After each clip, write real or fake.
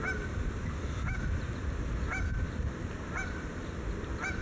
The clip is real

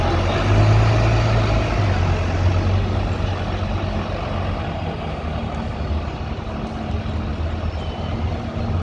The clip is real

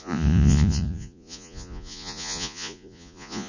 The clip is fake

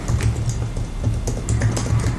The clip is real